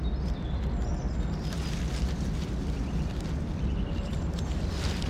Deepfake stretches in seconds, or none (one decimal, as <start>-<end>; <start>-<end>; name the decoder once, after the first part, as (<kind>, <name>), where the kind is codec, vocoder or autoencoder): none